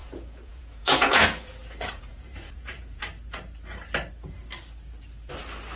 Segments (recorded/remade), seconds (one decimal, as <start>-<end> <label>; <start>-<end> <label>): 0.0-3.0 remade; 3.0-5.8 recorded